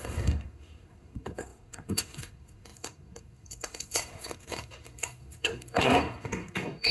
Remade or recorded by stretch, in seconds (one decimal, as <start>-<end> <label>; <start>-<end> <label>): 0.0-6.9 remade